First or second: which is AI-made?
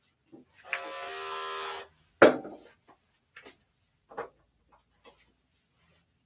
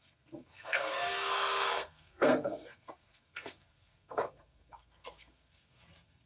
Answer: second